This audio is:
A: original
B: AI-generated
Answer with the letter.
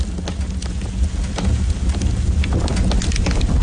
A